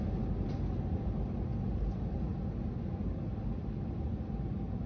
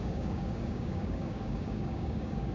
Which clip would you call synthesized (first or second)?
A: second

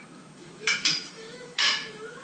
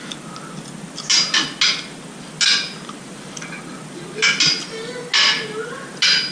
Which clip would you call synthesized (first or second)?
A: first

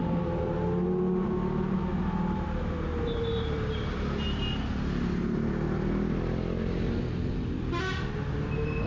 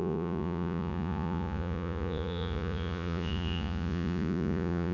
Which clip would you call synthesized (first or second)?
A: second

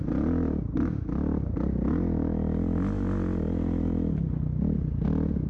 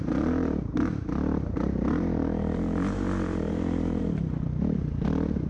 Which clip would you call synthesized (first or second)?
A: second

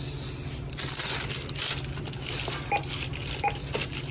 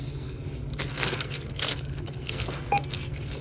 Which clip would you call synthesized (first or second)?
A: second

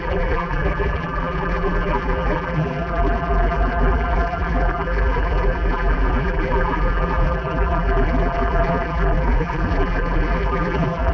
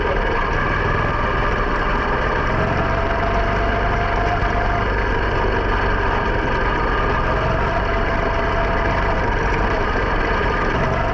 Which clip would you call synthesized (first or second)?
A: first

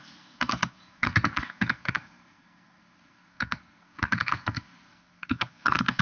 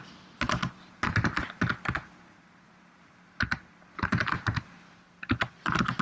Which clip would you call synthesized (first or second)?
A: first